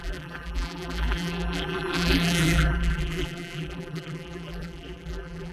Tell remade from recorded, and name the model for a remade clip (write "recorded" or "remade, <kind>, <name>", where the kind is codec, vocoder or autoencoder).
remade, vocoder, BigVGAN v2